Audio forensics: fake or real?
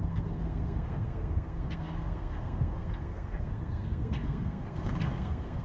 fake